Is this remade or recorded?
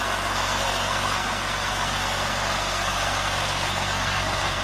remade